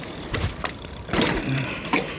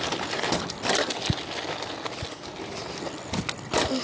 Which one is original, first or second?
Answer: second